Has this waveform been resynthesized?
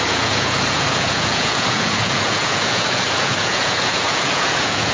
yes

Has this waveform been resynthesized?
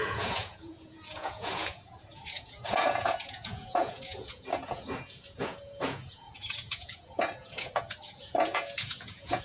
yes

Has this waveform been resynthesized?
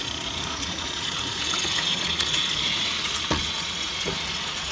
yes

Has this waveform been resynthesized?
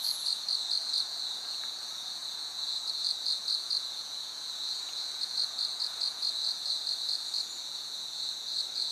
yes